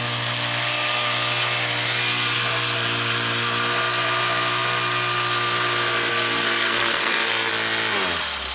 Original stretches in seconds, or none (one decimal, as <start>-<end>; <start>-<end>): 0.0-6.1; 7.5-8.5